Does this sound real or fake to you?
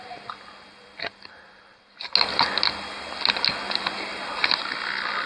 real